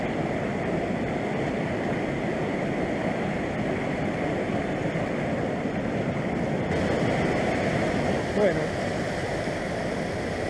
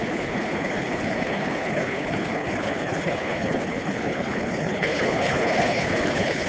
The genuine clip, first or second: first